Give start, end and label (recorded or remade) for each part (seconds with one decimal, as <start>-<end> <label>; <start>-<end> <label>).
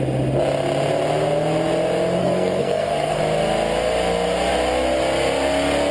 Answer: 0.0-2.2 recorded; 2.2-3.2 remade; 3.2-5.9 recorded